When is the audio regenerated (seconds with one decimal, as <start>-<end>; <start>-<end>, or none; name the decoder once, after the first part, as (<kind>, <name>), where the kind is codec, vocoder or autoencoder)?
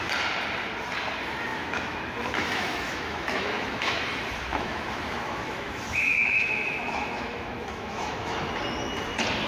1.5-4.0 (autoencoder, DAC-VAE); 4.5-8.5